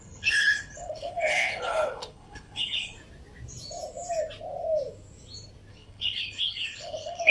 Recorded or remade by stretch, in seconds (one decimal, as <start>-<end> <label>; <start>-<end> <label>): 0.0-2.9 remade; 2.9-5.7 recorded; 5.7-7.3 remade